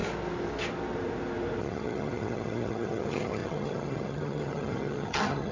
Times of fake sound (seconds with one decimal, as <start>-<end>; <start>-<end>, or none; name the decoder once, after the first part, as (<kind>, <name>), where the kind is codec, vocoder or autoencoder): 1.6-5.5 (vocoder, HiFi-GAN)